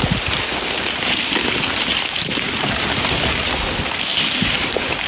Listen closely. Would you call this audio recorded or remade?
recorded